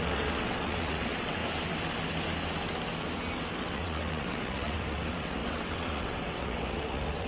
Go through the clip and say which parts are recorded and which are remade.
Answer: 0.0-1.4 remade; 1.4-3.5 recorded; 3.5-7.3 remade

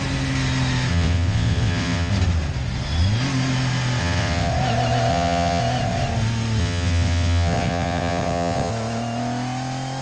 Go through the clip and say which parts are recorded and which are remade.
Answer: 0.0-0.9 recorded; 0.9-2.1 remade; 2.1-4.0 recorded; 4.0-4.5 remade; 4.5-5.1 recorded; 5.1-5.6 remade; 5.6-6.6 recorded; 6.6-8.7 remade; 8.7-10.0 recorded

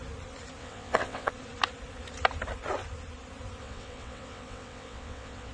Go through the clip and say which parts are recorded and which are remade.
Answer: 0.0-0.6 recorded; 0.6-1.3 remade; 1.3-3.6 recorded; 3.6-5.5 remade

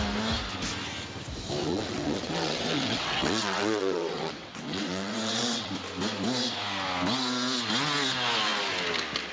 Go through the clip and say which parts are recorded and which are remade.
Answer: 0.0-1.6 recorded; 1.6-5.7 remade; 5.7-9.3 recorded

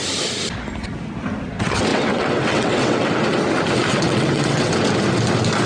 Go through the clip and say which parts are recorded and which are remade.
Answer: 0.0-1.9 recorded; 1.9-3.1 remade; 3.1-3.9 recorded; 3.9-4.7 remade; 4.7-5.7 recorded

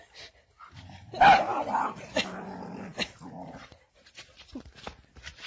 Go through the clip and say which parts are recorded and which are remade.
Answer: 0.0-5.5 recorded